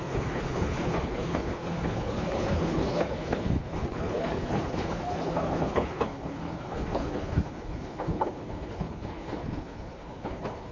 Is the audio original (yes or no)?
no